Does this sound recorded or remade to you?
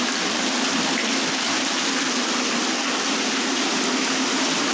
recorded